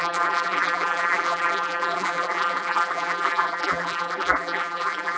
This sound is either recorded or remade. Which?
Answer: remade